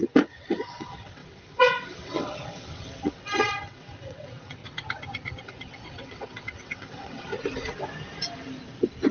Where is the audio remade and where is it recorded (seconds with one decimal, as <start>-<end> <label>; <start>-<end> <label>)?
0.0-4.6 remade; 4.6-5.4 recorded; 5.4-7.3 remade; 7.3-9.1 recorded